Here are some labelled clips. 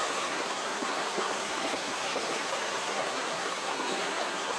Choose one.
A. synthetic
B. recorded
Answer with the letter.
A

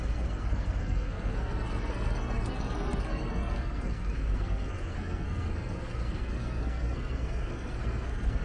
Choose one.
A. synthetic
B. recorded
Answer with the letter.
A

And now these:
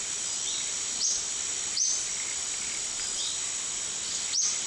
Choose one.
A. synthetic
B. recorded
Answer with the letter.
B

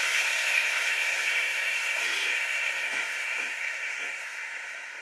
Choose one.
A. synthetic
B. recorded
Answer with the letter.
A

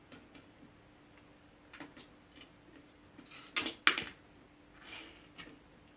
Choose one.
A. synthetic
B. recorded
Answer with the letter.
B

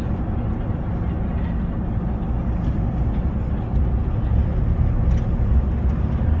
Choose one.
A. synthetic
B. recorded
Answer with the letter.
B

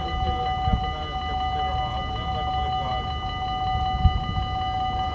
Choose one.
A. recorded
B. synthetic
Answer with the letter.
A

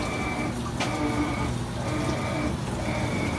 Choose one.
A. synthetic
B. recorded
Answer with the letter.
B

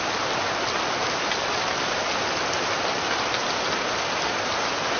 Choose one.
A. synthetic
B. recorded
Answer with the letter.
B